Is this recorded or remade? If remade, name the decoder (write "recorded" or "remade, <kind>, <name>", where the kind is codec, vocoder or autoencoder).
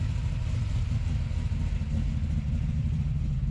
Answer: recorded